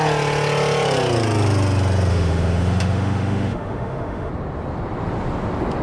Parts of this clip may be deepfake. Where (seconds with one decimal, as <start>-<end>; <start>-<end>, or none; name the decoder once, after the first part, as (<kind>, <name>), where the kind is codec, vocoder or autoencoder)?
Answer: 2.1-4.3 (autoencoder, DAC-VAE)